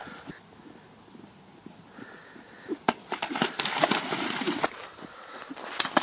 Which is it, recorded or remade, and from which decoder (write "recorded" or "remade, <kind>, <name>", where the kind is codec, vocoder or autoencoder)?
recorded